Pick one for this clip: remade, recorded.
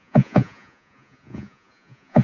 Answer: remade